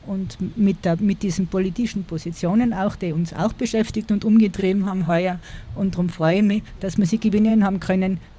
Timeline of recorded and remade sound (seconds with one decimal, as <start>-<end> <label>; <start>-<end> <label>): 0.0-4.6 recorded; 4.6-5.5 remade; 5.5-6.1 recorded; 6.1-6.7 remade; 6.7-8.4 recorded